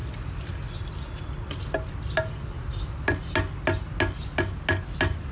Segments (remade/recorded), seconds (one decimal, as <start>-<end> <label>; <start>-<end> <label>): 0.0-5.3 recorded